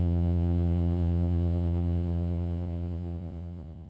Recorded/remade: remade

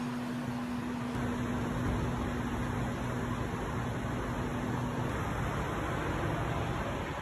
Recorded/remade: recorded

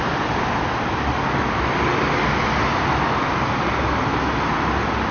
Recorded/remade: recorded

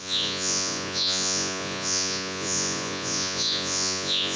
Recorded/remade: remade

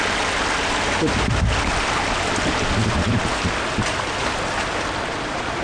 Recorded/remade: recorded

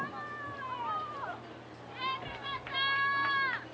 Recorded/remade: recorded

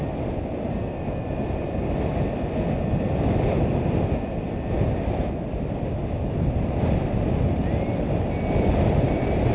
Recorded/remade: recorded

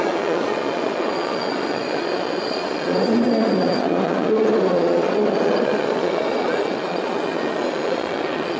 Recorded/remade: remade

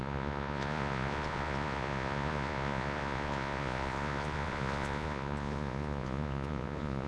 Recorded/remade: remade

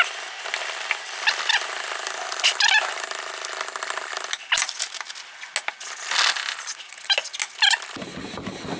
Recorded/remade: recorded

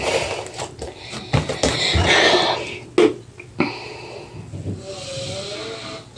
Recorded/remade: recorded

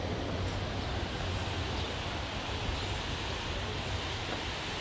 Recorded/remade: recorded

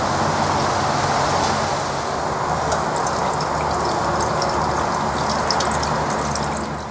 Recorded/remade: recorded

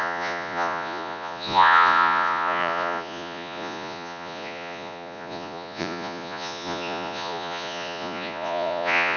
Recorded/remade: remade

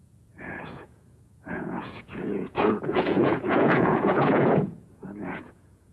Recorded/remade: remade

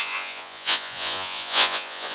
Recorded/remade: remade